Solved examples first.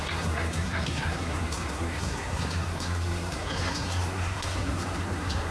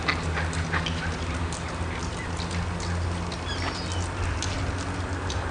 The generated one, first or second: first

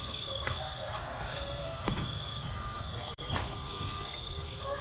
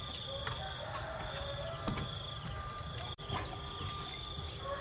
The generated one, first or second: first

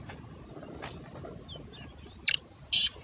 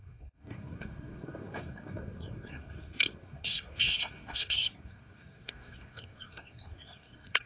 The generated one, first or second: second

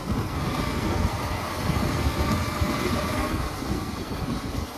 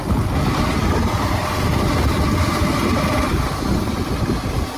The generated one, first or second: first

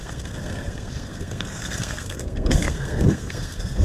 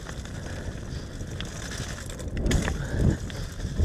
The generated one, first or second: first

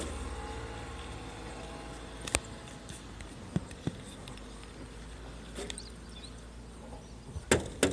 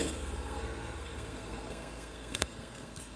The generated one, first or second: second